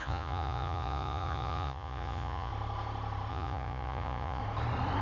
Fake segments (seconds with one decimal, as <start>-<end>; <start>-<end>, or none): 0.0-2.5; 3.3-4.4